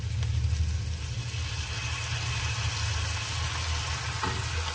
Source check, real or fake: real